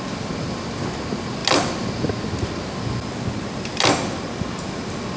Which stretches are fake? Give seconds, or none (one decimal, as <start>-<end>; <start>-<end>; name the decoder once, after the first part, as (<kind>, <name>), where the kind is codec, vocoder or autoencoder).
none